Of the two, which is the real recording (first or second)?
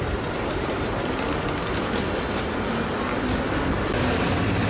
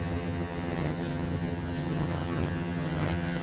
first